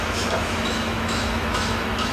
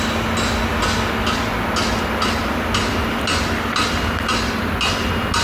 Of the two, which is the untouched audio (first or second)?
second